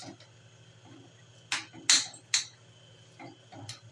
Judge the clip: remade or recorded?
recorded